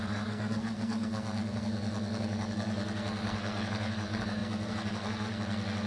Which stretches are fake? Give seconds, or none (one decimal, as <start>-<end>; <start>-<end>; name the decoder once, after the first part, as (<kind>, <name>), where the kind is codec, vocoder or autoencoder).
0.0-5.9 (codec, SNAC)